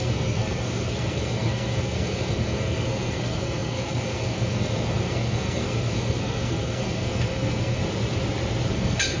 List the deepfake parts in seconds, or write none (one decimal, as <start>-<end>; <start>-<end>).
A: 0.0-7.8; 8.7-9.2